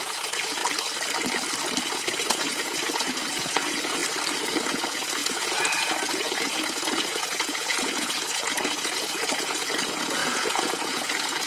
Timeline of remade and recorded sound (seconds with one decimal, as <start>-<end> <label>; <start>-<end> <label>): 0.0-0.6 remade; 0.6-1.9 recorded; 1.9-4.0 remade; 4.0-4.5 recorded; 4.5-11.5 remade